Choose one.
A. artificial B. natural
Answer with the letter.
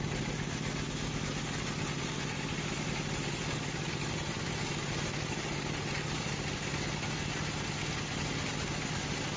B